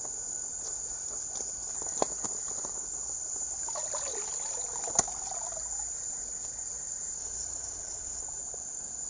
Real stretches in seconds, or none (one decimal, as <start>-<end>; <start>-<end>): 0.0-7.2; 8.2-9.1